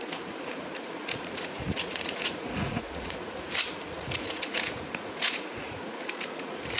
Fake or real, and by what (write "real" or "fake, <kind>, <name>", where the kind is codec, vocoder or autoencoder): fake, vocoder, Vocos